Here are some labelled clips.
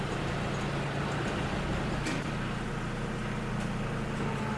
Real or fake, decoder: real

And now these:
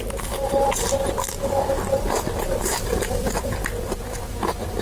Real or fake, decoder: fake, vocoder, BigVGAN v2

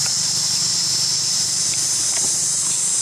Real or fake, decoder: fake, vocoder, BigVGAN v2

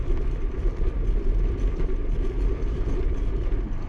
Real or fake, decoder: fake, vocoder, BigVGAN v2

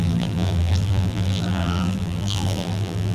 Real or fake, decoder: fake, vocoder, BigVGAN v2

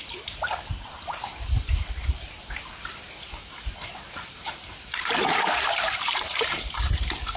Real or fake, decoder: fake, vocoder, BigVGAN v2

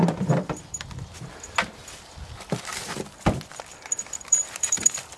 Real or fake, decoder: fake, vocoder, BigVGAN v2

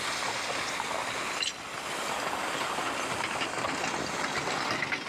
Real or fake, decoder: real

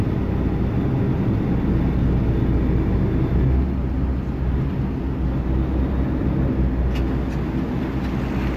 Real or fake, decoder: real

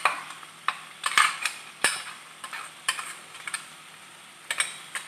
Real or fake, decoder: fake, vocoder, BigVGAN v2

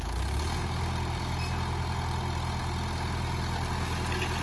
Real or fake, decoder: real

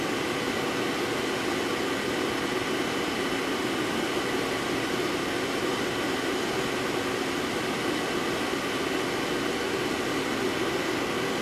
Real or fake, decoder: real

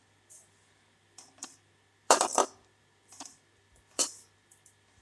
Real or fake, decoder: fake, vocoder, BigVGAN v2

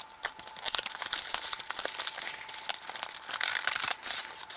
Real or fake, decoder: real